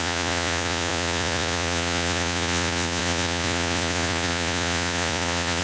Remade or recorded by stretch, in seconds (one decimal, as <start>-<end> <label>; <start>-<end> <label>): 0.0-5.6 remade